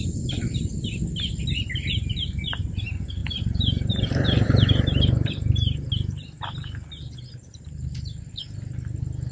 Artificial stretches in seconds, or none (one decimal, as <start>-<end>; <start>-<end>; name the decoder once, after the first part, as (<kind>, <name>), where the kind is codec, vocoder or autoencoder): 3.2-5.9 (vocoder, BigVGAN v2); 7.5-8.2